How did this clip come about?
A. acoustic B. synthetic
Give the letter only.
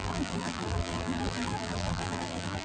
B